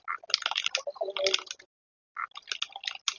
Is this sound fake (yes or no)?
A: no